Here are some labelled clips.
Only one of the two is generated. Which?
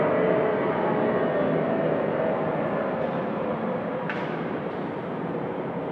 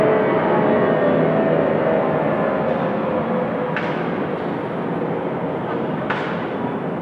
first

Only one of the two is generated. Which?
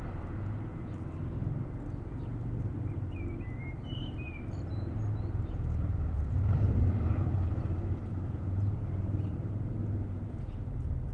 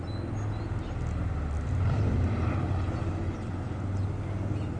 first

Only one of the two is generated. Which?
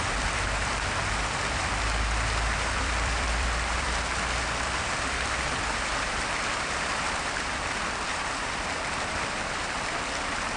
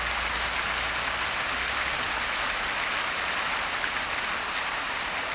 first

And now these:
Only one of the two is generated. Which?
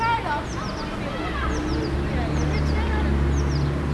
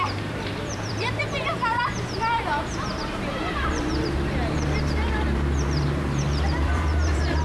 second